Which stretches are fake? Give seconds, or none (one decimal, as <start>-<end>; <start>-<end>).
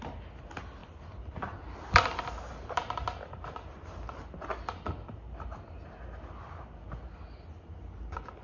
none